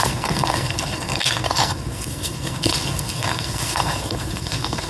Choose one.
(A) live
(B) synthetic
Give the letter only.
B